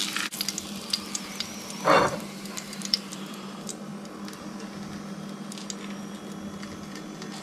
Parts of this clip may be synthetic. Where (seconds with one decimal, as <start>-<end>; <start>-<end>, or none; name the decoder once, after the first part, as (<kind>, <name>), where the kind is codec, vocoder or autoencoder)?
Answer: 2.1-3.9 (vocoder, BigVGAN v2)